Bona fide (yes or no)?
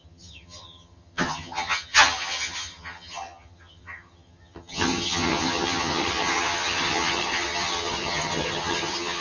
no